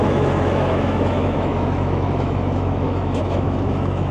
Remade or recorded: remade